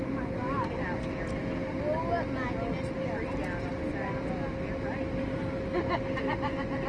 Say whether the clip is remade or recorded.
recorded